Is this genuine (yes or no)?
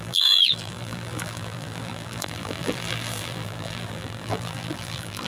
no